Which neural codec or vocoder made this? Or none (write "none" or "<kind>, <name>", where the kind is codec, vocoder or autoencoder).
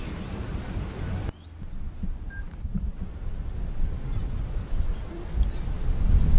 none